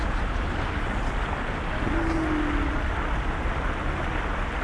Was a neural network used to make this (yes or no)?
no